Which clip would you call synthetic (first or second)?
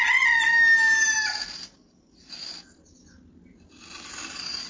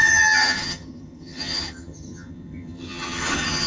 second